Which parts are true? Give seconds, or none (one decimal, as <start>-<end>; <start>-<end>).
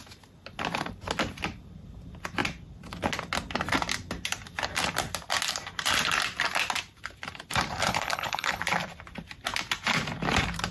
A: 0.0-7.8; 8.6-10.7